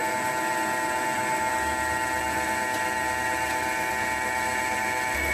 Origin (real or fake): real